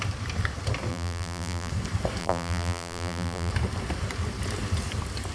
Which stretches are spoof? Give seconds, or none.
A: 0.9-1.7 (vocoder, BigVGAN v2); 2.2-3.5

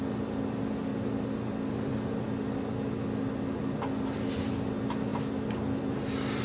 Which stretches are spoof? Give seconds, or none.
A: none